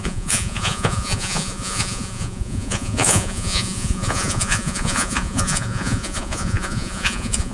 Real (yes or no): no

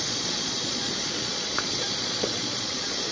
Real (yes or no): no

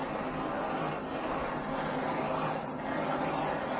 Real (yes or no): yes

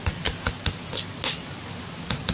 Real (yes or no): yes